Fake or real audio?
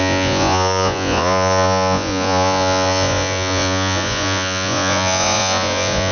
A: fake